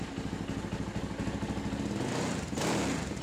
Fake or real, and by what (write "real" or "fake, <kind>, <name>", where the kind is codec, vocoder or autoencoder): real